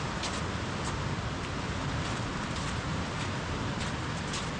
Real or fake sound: real